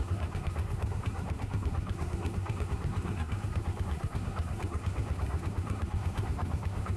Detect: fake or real fake